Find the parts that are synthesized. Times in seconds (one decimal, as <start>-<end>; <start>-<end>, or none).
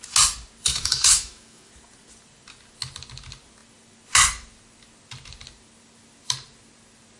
0.7-1.7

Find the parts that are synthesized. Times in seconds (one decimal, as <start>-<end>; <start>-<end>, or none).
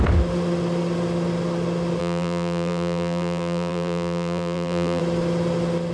2.0-5.0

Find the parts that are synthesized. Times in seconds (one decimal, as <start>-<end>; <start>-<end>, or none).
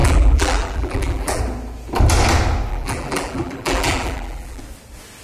0.0-1.4; 2.7-4.6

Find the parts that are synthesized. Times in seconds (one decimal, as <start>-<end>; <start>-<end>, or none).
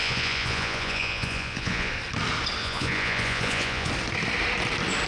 0.0-1.9; 2.6-3.9